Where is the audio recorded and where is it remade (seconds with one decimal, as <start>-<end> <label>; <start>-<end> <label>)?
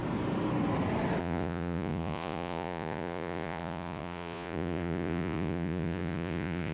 0.0-1.2 recorded; 1.2-6.7 remade